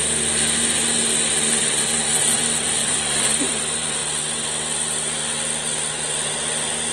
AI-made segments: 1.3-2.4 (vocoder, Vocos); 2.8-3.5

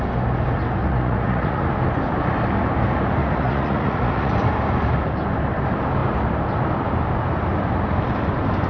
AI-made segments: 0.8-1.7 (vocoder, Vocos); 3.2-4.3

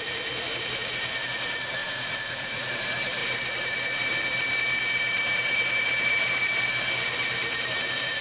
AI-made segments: 1.8-2.7 (vocoder, Vocos)

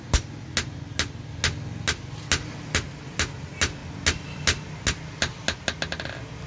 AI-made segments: none

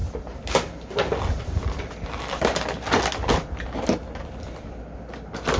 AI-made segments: none